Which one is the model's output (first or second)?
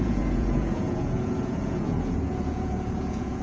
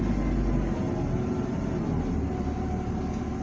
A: first